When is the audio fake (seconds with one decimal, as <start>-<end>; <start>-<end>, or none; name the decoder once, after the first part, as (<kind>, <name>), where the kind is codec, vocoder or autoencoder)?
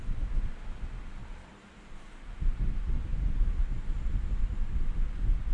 1.2-2.3 (vocoder, BigVGAN v2); 3.6-4.4